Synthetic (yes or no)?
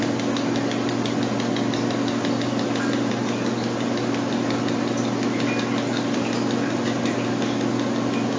no